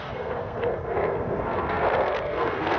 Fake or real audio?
fake